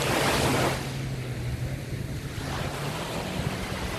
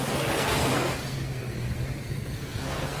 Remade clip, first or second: second